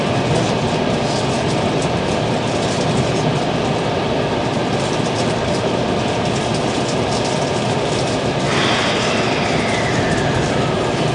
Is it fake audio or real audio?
fake